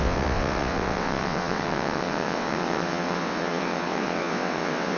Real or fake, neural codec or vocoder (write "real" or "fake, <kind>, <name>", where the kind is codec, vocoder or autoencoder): fake, vocoder, WaveNeXt